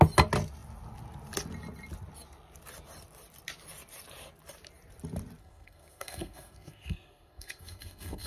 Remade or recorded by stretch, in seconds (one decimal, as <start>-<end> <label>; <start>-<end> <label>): 0.0-5.4 recorded; 5.4-8.3 remade